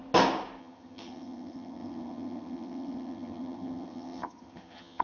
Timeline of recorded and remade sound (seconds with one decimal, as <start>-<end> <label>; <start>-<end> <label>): 0.0-0.6 recorded; 0.6-5.0 remade